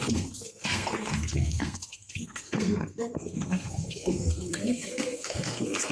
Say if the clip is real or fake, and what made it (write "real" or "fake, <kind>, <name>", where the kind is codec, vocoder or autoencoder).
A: fake, codec, SNAC